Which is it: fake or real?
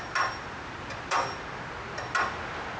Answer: real